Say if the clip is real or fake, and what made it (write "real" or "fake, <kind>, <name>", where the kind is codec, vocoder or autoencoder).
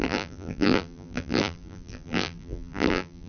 fake, vocoder, BigVGAN v2